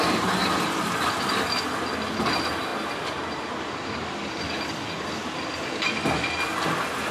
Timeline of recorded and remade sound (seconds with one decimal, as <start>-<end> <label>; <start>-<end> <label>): 0.0-7.1 recorded